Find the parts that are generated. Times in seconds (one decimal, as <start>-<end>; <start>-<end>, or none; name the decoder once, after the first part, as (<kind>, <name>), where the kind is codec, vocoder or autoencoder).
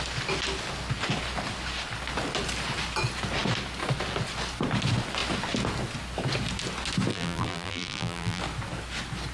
7.1-8.4 (vocoder, BigVGAN v2)